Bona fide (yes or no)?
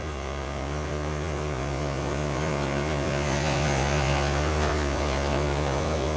no